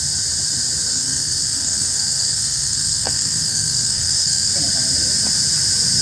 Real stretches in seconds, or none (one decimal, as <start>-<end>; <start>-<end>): 0.0-0.9; 4.5-6.0

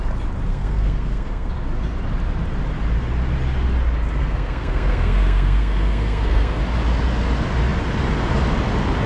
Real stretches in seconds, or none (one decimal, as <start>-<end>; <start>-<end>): 0.0-0.5; 1.5-4.2; 6.6-9.1

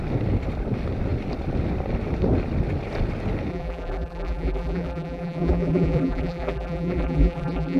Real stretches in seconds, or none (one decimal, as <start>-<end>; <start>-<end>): 0.0-3.5

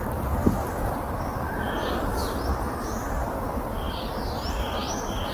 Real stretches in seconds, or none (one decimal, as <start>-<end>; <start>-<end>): 2.1-3.9

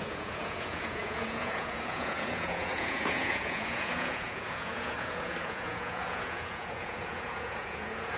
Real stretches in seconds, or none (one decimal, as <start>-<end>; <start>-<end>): none

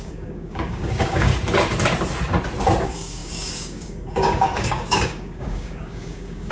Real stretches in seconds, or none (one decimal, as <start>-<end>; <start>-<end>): 1.3-2.8